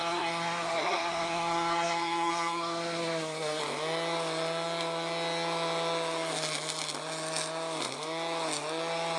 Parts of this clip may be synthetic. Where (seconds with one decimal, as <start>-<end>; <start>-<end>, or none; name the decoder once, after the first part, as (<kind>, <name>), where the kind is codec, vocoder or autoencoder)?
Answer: 0.0-3.6 (codec, SNAC)